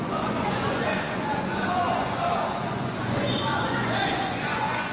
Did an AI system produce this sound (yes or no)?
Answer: yes